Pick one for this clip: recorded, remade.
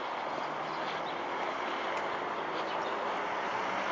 recorded